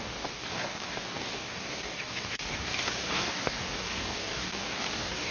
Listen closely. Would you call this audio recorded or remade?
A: remade